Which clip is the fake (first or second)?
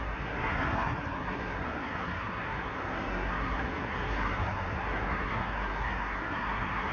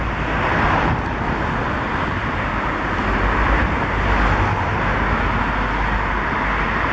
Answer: first